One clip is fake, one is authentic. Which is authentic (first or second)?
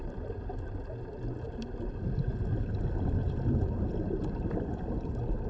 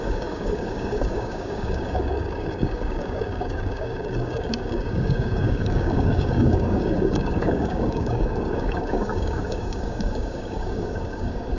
first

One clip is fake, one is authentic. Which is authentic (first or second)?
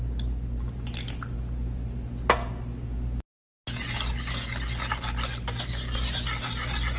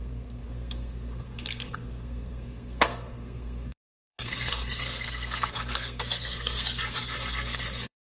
first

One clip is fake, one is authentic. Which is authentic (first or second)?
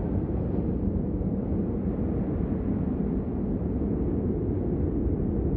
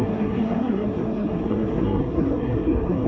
first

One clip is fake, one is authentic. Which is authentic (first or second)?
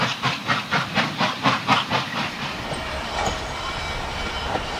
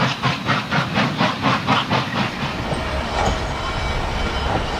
second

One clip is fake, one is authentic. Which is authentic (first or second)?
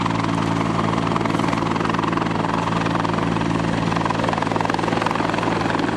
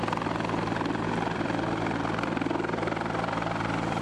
first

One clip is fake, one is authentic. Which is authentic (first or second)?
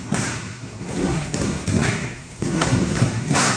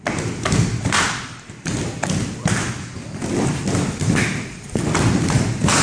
second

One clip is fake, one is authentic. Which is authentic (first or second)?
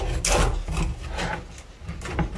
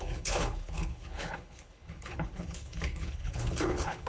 first